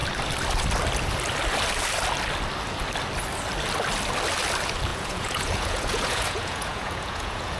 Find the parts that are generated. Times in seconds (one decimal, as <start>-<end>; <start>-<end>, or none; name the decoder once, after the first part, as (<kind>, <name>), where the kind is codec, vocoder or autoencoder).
4.9-7.6 (vocoder, Vocos)

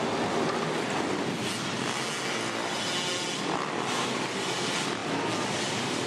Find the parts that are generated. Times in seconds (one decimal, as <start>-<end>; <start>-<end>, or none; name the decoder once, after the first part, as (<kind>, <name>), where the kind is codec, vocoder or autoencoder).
none